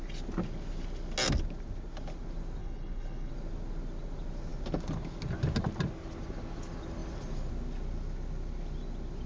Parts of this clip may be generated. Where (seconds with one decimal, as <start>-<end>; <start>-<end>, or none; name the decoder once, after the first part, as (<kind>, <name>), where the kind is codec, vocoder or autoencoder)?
2.6-3.3 (codec, HILCodec)